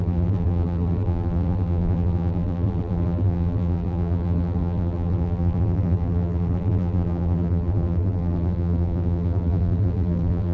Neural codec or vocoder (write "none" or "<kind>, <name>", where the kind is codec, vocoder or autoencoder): vocoder, BigVGAN v2